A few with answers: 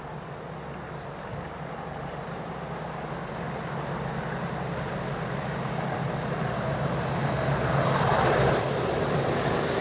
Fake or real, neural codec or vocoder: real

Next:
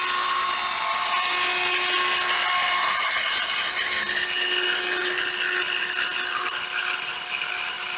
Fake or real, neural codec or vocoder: real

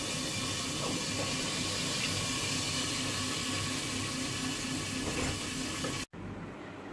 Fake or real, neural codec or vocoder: real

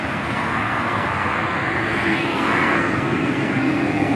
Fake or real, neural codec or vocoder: fake, codec, SNAC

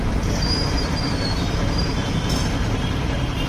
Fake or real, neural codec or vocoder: fake, vocoder, BigVGAN v2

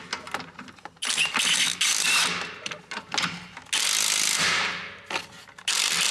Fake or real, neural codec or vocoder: real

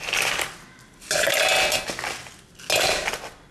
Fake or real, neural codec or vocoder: real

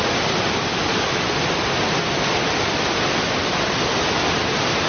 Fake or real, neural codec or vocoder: real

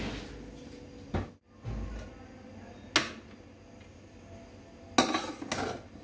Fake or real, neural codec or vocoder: real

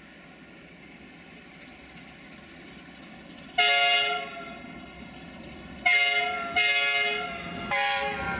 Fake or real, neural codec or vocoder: real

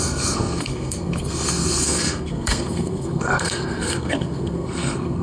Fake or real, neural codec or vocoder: fake, codec, SNAC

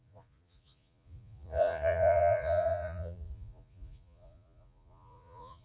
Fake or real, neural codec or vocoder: fake, vocoder, Vocos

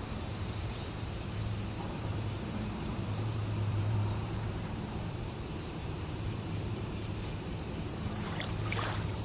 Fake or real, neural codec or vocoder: fake, vocoder, BigVGAN v2